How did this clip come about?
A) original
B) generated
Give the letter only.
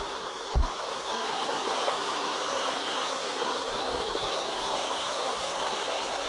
B